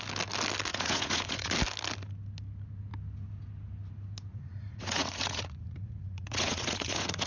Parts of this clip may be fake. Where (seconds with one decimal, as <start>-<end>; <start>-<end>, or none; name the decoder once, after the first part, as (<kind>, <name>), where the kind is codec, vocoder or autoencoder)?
0.7-1.5 (vocoder, Vocos); 4.3-7.3